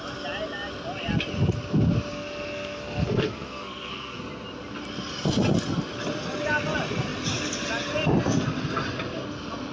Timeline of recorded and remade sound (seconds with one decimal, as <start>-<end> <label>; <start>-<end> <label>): 0.0-2.1 recorded; 2.1-4.2 remade; 4.2-9.7 recorded